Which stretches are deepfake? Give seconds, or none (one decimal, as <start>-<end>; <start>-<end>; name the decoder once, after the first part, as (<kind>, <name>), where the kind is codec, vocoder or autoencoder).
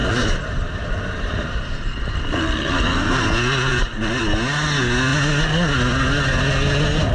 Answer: 0.0-3.1 (vocoder, BigVGAN v2); 3.7-4.2